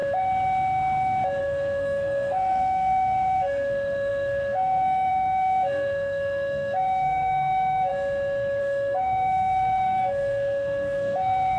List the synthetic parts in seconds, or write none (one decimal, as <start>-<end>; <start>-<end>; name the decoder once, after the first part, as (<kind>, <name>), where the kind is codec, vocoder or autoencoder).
1.4-7.9 (codec, SNAC); 8.6-11.6